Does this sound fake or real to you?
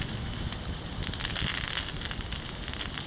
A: real